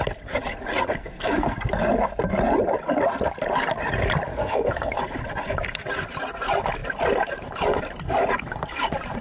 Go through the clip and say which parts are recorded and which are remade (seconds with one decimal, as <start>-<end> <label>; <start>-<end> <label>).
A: 0.0-1.0 recorded; 1.0-1.7 remade; 1.7-4.3 recorded; 4.3-4.9 remade; 4.9-9.2 recorded